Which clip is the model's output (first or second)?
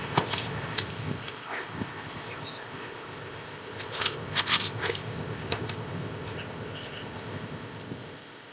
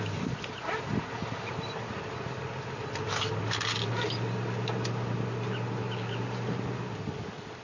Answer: first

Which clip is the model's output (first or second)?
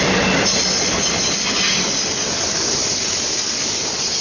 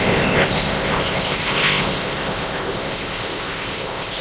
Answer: second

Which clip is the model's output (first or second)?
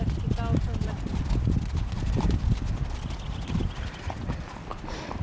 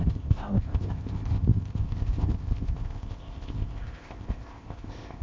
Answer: second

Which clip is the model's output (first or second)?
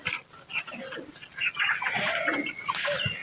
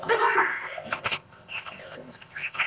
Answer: second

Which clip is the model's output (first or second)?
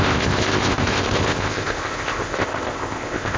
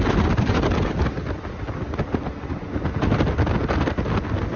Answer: first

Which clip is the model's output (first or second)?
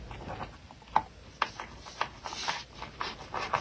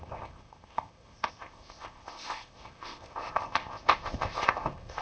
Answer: second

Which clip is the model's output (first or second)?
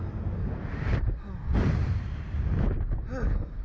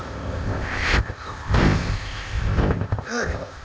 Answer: second